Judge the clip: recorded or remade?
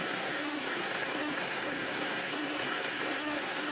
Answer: remade